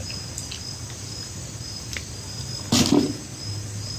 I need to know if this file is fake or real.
real